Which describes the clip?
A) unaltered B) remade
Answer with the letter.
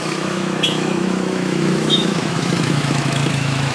B